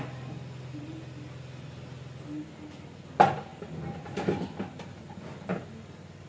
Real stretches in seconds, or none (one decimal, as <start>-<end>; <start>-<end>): 0.0-6.3